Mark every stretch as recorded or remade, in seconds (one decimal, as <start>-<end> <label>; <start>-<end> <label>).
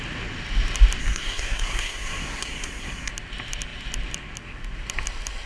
0.0-1.0 recorded; 1.0-3.1 remade; 3.1-5.5 recorded